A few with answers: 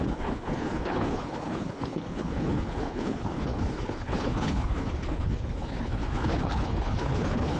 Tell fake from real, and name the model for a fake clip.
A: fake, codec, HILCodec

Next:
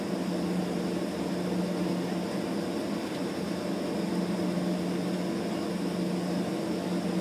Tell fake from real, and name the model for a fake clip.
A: real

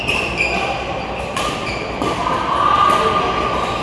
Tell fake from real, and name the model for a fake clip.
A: real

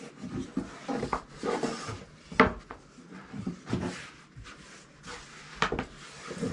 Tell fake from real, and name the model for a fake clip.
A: real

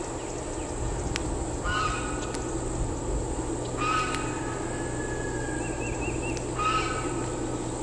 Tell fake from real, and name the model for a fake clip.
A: real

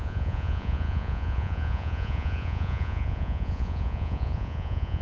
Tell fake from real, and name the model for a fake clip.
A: fake, vocoder, Vocos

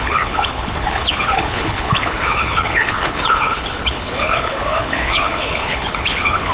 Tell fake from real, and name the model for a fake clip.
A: fake, codec, HILCodec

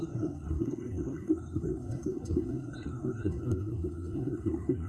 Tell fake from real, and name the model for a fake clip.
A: fake, codec, SNAC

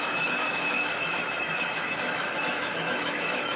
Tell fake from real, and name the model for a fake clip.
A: fake, autoencoder, DAC-VAE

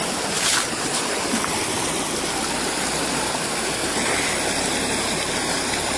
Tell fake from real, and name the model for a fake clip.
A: real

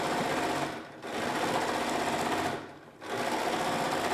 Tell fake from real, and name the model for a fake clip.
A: real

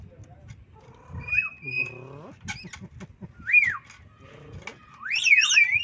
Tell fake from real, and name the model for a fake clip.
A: real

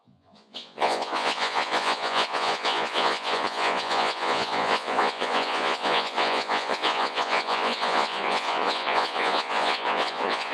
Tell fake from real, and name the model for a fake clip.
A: fake, vocoder, Vocos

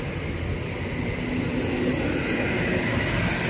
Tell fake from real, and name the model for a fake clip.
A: real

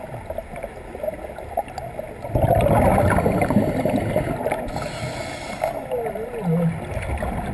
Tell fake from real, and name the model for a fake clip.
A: real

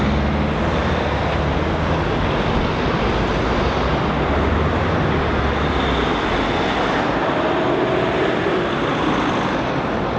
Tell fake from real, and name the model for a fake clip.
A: real